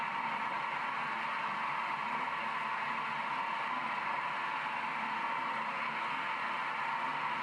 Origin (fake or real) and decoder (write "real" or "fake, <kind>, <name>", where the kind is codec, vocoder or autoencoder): real